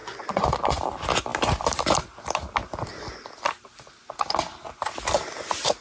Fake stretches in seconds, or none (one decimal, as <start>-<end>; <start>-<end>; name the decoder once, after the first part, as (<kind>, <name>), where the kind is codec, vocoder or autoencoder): 0.0-0.8 (vocoder, Vocos)